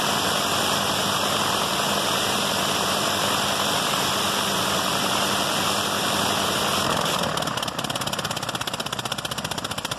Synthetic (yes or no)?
yes